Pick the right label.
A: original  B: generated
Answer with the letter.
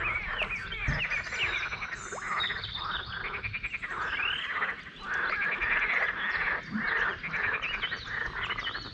A